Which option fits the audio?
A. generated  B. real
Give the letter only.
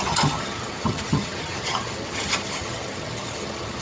A